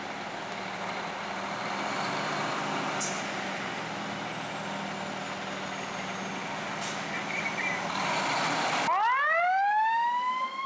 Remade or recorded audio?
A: recorded